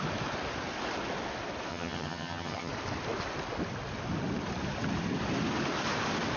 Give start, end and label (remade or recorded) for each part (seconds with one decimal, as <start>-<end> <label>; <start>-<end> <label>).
0.0-1.7 recorded; 1.7-2.7 remade; 2.7-6.4 recorded